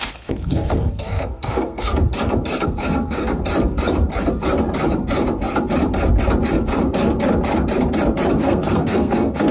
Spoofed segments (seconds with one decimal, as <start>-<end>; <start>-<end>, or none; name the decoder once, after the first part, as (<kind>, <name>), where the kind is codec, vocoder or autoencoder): 0.0-1.9 (codec, SNAC); 2.6-3.3; 8.4-9.5